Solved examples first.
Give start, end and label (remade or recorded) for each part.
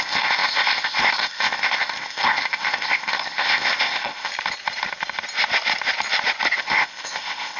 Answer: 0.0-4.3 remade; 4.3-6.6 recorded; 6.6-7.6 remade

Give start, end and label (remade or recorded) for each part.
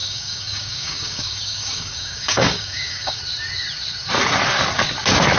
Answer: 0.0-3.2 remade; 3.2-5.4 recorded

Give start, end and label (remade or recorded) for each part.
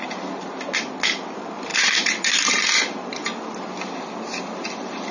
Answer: 0.0-5.1 recorded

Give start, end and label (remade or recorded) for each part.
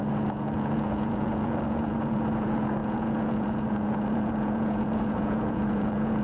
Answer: 0.0-6.2 remade